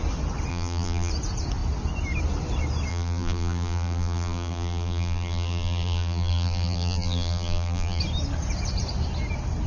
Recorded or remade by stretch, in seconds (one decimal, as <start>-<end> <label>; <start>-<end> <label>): 0.0-0.5 recorded; 0.5-1.1 remade; 1.1-2.9 recorded; 2.9-8.0 remade; 8.0-9.7 recorded